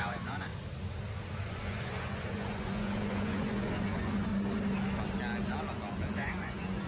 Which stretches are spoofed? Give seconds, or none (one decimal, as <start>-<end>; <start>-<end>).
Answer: 0.0-0.5; 1.5-4.3; 6.1-6.9